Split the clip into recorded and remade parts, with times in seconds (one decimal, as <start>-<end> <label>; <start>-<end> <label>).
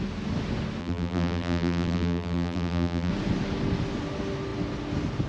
0.0-0.8 recorded; 0.8-3.1 remade; 3.1-5.3 recorded